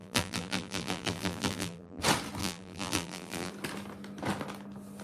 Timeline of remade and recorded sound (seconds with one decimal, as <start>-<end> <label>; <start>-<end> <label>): 0.0-2.0 remade; 2.0-2.4 recorded; 2.4-3.5 remade; 3.5-5.0 recorded